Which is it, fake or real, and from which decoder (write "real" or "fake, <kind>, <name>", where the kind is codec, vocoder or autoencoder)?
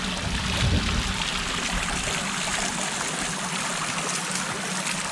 real